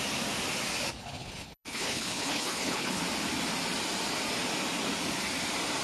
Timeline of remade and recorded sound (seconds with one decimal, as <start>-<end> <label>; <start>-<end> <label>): 0.0-1.0 recorded; 1.0-3.0 remade; 3.0-5.8 recorded